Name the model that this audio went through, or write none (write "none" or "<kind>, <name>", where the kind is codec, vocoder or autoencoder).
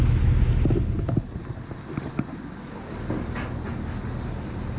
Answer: none